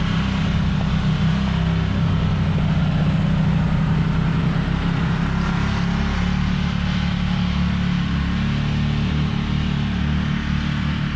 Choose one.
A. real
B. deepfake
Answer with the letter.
A